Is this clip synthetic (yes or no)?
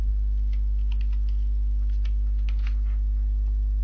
yes